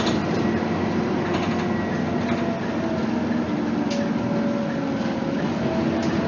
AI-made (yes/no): no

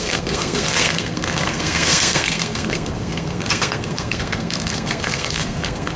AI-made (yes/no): yes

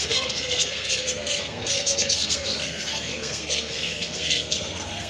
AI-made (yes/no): yes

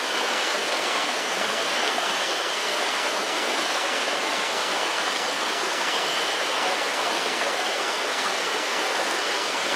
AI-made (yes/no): yes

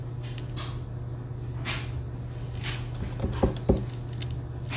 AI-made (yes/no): no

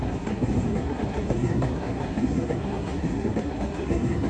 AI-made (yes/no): yes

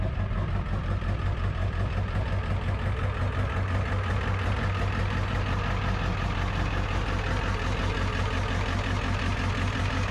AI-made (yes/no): no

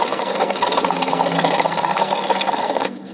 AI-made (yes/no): yes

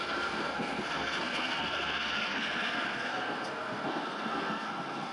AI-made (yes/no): yes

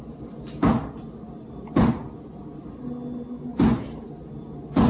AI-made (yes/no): no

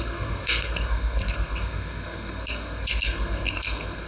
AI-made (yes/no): yes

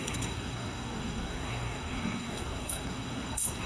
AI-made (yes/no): yes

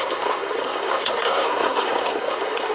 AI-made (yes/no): yes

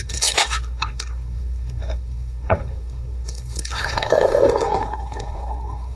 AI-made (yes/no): yes